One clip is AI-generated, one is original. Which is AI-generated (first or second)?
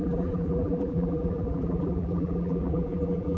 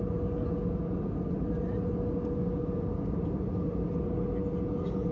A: first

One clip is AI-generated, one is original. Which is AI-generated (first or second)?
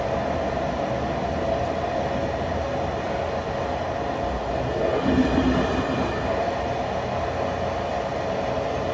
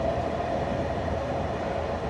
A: second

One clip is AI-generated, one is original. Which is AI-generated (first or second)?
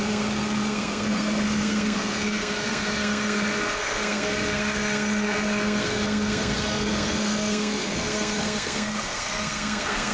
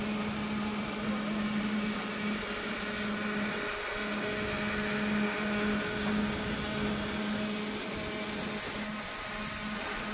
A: first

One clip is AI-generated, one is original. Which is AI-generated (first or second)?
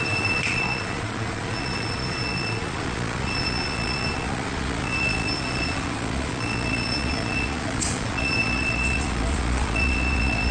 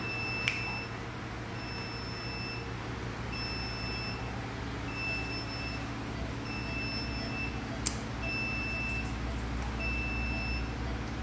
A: first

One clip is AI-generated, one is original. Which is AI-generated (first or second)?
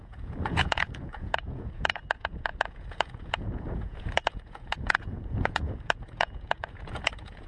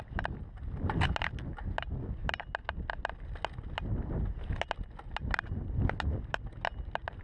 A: first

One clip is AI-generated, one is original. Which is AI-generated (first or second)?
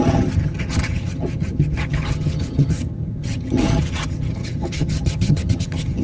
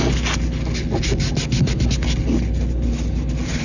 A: first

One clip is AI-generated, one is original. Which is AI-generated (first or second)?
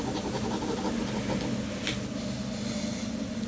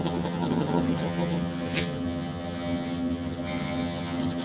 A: second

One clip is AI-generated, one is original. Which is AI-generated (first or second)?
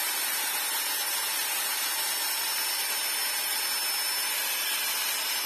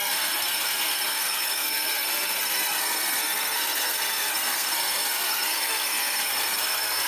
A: second